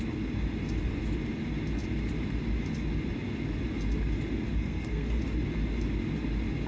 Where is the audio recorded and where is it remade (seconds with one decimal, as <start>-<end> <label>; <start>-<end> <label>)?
0.0-4.5 recorded; 4.5-5.2 remade; 5.2-6.7 recorded

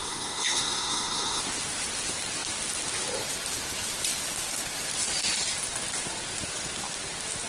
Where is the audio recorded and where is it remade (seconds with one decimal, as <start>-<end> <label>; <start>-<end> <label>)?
0.0-1.4 remade; 1.4-7.5 recorded